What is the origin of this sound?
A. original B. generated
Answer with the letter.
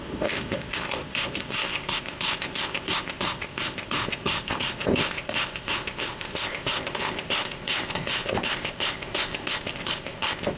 B